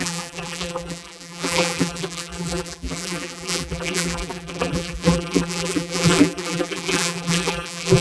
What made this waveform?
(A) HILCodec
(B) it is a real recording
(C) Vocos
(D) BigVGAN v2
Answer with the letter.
D